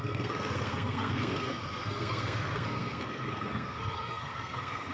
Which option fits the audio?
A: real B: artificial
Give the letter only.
B